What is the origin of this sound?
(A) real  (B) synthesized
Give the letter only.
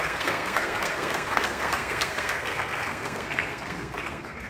B